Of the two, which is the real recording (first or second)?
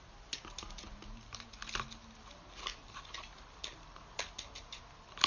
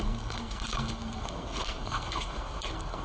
first